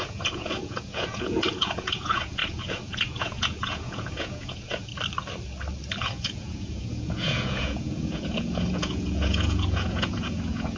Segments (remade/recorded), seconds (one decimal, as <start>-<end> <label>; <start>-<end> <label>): 0.0-4.9 remade; 4.9-6.0 recorded; 6.0-10.8 remade